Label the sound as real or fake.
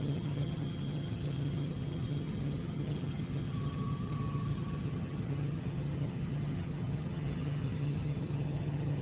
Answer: fake